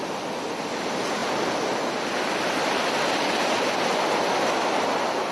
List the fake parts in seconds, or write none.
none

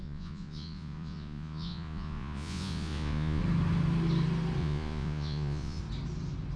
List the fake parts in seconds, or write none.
0.0-3.4 (vocoder, Vocos); 4.6-5.8